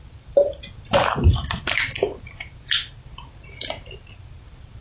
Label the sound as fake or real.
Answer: fake